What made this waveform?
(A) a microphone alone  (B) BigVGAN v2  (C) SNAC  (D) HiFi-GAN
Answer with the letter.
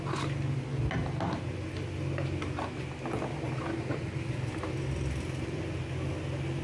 A